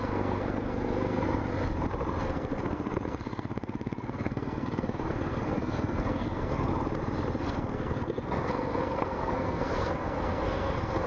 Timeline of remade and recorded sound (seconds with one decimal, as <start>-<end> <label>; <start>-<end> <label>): 0.0-1.4 remade; 1.4-2.2 recorded; 2.2-6.7 remade; 6.7-7.4 recorded; 7.4-11.1 remade